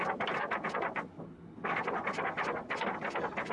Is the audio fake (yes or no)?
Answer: no